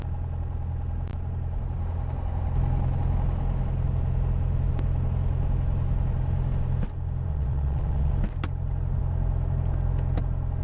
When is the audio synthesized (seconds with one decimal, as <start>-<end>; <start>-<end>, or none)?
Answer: 7.3-8.1